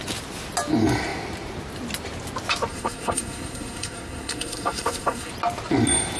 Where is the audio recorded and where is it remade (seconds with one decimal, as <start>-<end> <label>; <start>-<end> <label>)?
0.0-2.7 recorded; 2.7-5.3 remade; 5.3-6.2 recorded